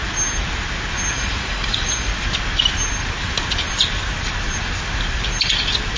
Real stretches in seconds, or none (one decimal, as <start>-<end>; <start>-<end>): 0.0-1.1; 2.1-6.0